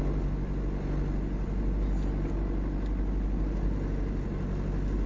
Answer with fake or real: real